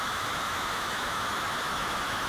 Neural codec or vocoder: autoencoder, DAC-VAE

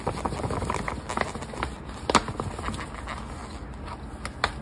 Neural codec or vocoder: none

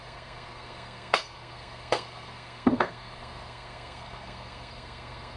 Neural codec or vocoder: codec, SNAC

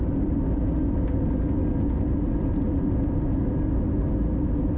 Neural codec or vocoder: none